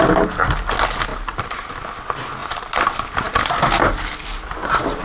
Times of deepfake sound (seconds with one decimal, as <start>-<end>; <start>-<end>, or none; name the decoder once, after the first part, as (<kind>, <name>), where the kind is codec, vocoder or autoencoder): none